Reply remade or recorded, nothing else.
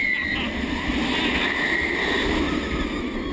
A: recorded